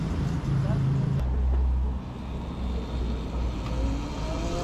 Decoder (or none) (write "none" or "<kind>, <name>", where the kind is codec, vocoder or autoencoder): none